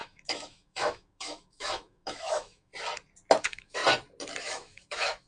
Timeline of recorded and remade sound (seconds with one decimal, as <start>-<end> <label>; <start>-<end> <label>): 0.0-2.7 remade; 2.7-3.4 recorded; 3.4-3.8 remade; 3.8-4.4 recorded; 4.4-5.3 remade